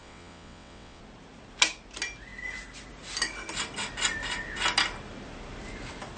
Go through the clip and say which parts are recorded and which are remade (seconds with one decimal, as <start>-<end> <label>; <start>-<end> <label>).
0.0-1.0 remade; 1.0-6.2 recorded